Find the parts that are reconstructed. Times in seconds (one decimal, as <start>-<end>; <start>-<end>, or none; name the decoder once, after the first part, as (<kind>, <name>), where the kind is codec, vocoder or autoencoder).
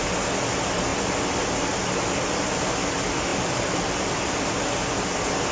none